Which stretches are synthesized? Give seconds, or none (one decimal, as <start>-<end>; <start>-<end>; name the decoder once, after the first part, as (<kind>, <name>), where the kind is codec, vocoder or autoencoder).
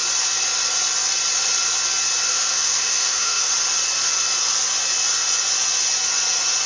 2.3-3.5 (autoencoder, DAC-VAE)